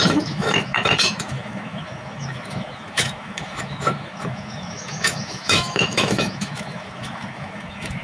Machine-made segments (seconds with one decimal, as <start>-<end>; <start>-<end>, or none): 0.0-8.0